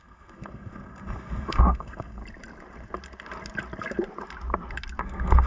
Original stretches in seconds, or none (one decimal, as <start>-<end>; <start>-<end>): 2.2-5.0